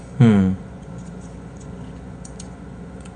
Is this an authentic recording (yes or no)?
no